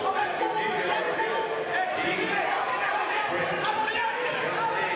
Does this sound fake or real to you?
real